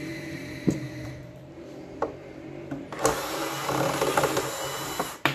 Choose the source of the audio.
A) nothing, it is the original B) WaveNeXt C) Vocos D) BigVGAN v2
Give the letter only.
D